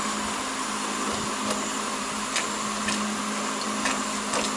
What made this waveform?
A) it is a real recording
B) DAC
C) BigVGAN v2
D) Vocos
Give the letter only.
A